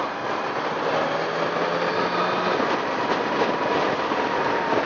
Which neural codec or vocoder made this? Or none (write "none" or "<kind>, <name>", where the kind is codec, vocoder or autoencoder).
none